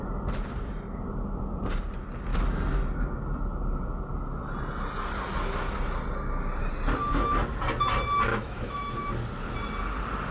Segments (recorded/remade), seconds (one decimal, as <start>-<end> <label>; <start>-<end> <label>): 0.0-8.3 recorded; 8.3-9.1 remade; 9.1-10.3 recorded